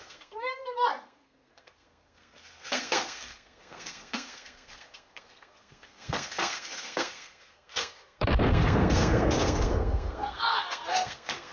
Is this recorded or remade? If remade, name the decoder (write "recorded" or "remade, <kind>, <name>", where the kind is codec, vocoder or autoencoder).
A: remade, codec, SNAC